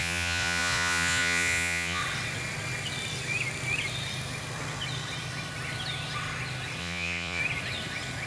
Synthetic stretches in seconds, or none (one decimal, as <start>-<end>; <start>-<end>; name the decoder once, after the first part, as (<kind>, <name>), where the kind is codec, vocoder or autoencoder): 0.0-2.0 (vocoder, Vocos); 6.8-7.4